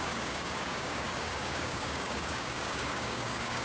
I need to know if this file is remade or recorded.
remade